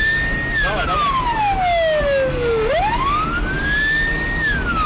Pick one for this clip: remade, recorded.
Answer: recorded